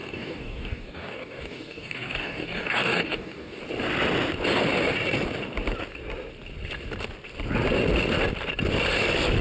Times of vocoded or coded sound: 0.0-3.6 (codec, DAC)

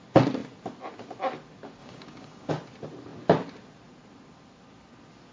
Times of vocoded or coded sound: 1.8-2.5 (codec, DAC)

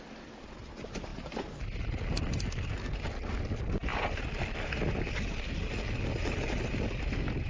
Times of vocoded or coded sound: none

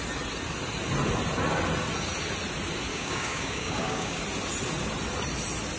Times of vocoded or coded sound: 2.9-4.2 (codec, DAC)

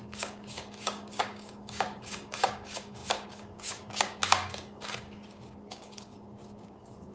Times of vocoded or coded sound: 0.0-7.1 (codec, DAC)